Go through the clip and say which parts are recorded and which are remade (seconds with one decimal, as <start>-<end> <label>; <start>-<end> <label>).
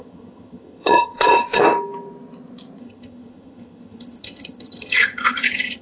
0.0-1.6 remade; 1.6-2.8 recorded; 2.8-5.8 remade